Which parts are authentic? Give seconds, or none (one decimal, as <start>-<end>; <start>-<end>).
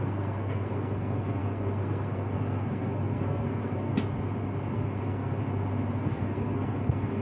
3.9-4.7; 5.4-5.9